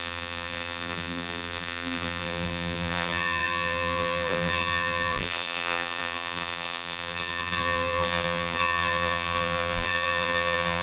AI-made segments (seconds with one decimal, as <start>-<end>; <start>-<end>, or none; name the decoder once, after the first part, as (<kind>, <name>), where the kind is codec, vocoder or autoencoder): 0.0-10.8 (vocoder, BigVGAN v2)